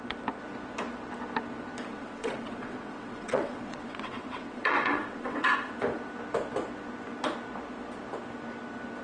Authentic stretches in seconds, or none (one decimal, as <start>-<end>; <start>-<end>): 0.0-1.9; 5.7-9.0